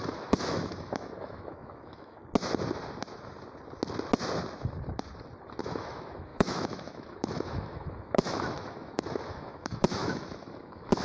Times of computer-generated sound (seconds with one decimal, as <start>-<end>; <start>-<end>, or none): 0.0-2.2; 5.6-11.0